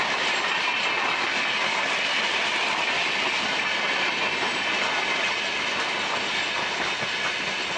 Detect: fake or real real